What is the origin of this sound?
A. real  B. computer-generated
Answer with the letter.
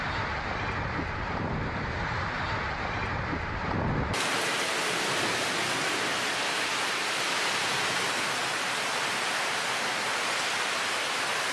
A